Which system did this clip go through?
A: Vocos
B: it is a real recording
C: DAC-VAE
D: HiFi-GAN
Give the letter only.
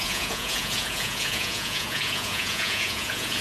A